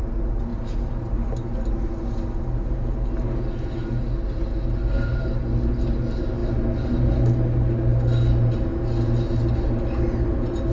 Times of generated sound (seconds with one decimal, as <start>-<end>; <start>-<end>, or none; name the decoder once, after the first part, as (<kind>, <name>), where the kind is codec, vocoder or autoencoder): none